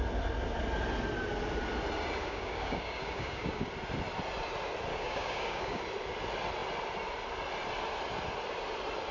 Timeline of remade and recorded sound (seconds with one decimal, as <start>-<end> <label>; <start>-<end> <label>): 0.0-2.2 recorded; 2.2-3.7 remade; 3.7-4.9 recorded; 4.9-5.8 remade; 5.8-9.1 recorded